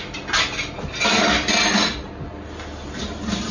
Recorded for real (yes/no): yes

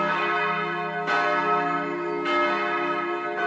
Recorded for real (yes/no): yes